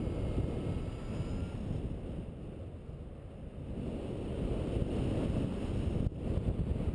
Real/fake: real